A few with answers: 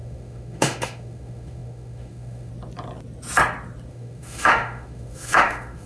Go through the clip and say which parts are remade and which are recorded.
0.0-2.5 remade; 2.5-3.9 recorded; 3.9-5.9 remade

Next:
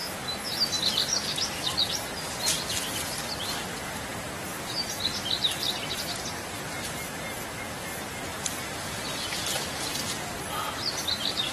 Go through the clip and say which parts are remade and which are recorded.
0.0-0.9 recorded; 0.9-11.5 remade

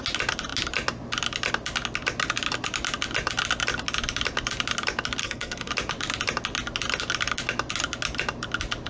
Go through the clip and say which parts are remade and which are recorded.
0.0-5.2 recorded; 5.2-5.7 remade; 5.7-8.9 recorded

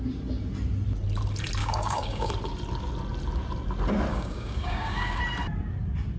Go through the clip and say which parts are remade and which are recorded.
0.0-1.6 recorded; 1.6-2.3 remade; 2.3-4.1 recorded; 4.1-5.2 remade; 5.2-6.2 recorded

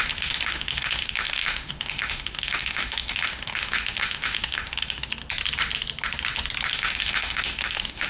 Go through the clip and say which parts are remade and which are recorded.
0.0-5.1 remade; 5.1-6.7 recorded; 6.7-8.1 remade

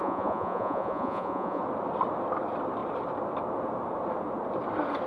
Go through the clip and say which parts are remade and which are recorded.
0.0-1.6 remade; 1.6-5.1 recorded